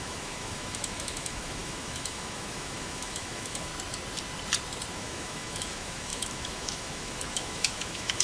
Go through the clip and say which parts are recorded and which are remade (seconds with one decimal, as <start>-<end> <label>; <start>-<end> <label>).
0.0-3.7 remade; 3.7-4.9 recorded; 4.9-8.2 remade